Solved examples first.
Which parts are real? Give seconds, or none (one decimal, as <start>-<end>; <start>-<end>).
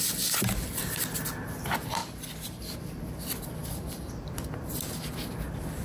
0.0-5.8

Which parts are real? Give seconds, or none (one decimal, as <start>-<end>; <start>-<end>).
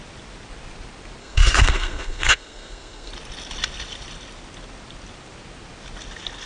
0.0-1.2; 3.1-6.5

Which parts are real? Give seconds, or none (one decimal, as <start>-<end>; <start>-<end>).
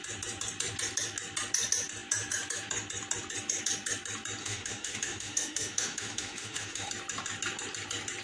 0.0-4.4; 6.9-8.2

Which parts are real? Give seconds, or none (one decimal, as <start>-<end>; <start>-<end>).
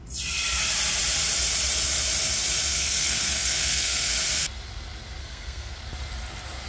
0.0-2.7; 4.1-5.2; 5.7-6.7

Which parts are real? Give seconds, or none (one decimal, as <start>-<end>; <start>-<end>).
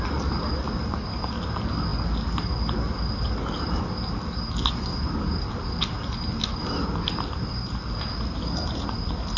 0.0-9.4